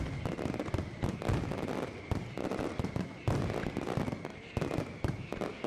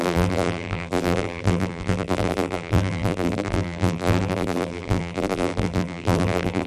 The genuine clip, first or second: first